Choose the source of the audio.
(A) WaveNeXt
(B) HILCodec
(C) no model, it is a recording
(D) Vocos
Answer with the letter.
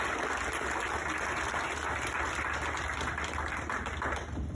C